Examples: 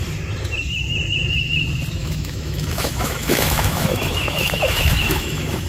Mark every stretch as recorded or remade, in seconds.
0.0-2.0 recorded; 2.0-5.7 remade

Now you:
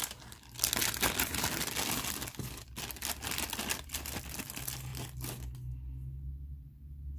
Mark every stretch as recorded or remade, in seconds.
0.0-7.2 recorded